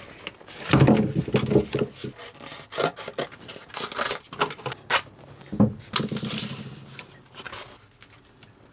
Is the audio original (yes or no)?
yes